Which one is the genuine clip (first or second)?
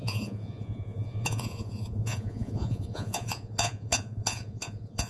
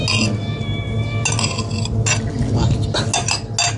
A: second